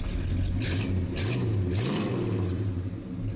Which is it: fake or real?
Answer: real